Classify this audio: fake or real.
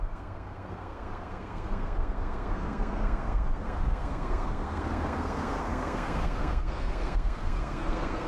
fake